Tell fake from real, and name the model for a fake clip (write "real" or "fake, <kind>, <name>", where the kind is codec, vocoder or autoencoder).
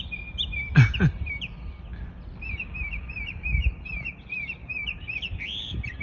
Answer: real